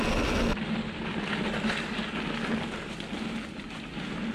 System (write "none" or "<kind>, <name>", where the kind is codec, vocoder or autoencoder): none